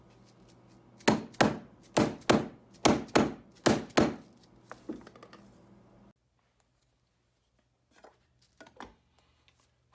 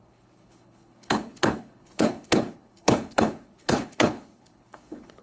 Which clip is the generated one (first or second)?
second